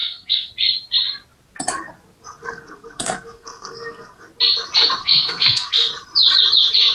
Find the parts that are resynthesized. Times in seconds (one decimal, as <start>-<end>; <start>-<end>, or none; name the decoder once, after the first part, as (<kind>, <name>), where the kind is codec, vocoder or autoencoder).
0.0-0.5 (codec, SNAC); 2.4-4.2; 5.0-5.9